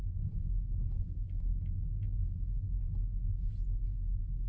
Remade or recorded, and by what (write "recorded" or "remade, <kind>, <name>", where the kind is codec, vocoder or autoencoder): recorded